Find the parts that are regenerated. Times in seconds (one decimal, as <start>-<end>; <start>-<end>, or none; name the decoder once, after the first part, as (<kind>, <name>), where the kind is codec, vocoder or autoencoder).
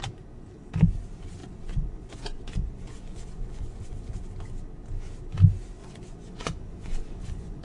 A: 1.4-4.2 (vocoder, Vocos); 5.8-7.6